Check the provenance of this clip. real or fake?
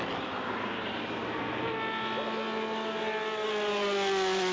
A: real